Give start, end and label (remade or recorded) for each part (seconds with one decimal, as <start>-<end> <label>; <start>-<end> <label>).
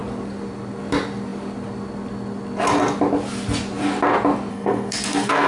0.0-4.5 recorded; 4.5-5.5 remade